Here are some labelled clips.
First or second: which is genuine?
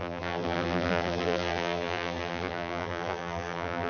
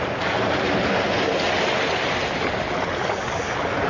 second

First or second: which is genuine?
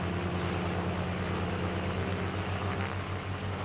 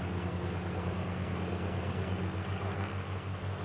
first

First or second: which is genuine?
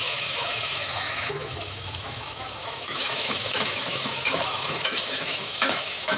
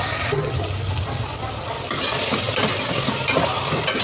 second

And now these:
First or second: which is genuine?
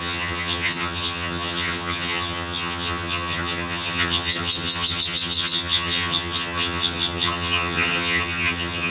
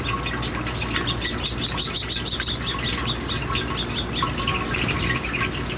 second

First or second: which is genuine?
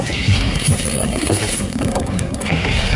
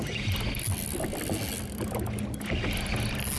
second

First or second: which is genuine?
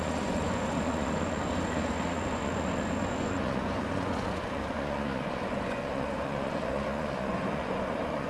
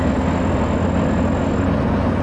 second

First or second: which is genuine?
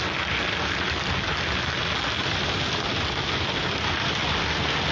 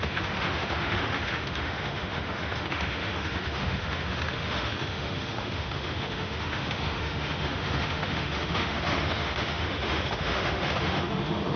first